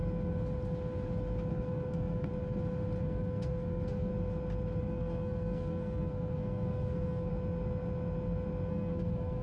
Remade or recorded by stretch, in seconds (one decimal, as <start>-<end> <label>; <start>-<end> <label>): 0.0-1.5 recorded; 1.5-2.3 remade; 2.3-3.0 recorded; 3.0-4.1 remade; 4.1-4.8 recorded; 4.8-7.3 remade; 7.3-8.7 recorded; 8.7-9.4 remade